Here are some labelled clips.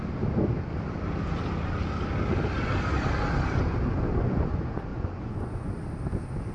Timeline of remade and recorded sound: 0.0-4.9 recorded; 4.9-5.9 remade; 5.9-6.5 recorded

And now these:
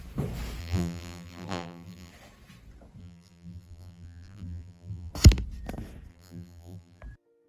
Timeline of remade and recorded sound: 0.0-0.6 recorded; 0.6-2.1 remade; 2.1-3.0 recorded; 3.0-5.1 remade; 5.1-6.1 recorded; 6.1-7.0 remade; 7.0-7.5 recorded

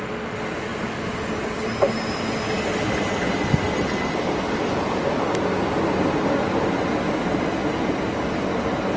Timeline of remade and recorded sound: 0.0-9.0 recorded